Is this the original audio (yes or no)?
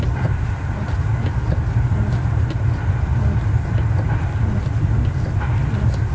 yes